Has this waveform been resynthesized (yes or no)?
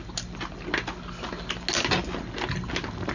no